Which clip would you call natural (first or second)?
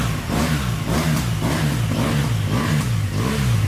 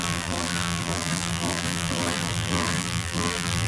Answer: first